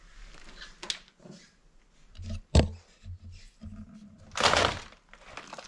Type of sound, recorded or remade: recorded